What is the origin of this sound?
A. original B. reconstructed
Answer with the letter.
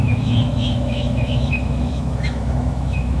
B